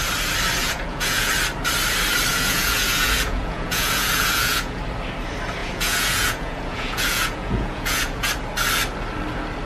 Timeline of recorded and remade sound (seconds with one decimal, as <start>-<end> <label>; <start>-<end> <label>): 0.0-0.6 recorded; 0.6-1.3 remade; 1.3-2.3 recorded; 2.3-4.8 remade; 4.8-5.6 recorded; 5.6-8.3 remade; 8.3-9.7 recorded